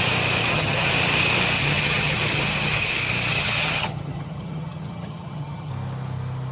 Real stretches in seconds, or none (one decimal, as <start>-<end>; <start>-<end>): 0.0-0.4; 0.9-1.6; 2.9-3.3; 5.7-6.5